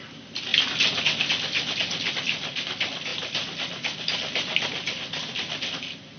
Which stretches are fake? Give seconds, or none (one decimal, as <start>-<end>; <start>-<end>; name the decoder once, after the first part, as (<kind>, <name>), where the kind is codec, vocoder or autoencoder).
none